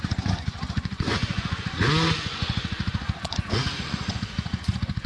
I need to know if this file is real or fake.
fake